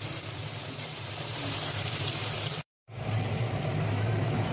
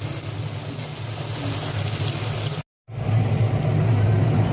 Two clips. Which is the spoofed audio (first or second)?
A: first